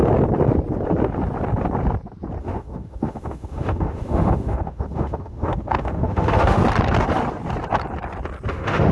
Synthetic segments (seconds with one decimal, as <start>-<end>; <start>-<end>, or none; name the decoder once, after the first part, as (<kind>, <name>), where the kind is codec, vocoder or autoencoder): 2.4-6.6 (autoencoder, DAC-VAE); 8.5-8.9